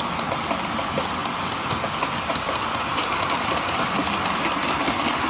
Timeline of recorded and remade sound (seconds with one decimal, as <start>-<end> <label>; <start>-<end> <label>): 0.0-5.3 recorded